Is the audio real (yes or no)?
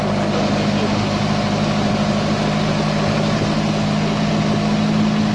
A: yes